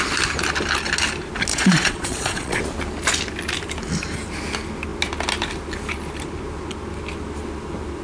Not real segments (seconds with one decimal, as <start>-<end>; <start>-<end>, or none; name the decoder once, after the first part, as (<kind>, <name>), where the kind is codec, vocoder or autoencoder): 1.5-2.6 (vocoder, Vocos)